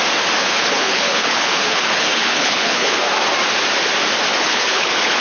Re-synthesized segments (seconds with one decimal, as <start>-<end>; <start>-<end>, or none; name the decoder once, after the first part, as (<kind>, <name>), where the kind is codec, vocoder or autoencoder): 0.4-3.0 (codec, HILCodec); 4.3-5.2